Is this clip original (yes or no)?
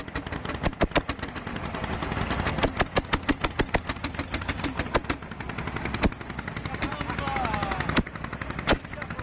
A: yes